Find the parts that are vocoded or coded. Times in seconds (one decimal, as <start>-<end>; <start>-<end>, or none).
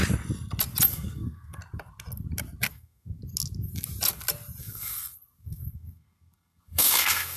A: 0.9-1.6; 2.7-3.2; 4.6-7.4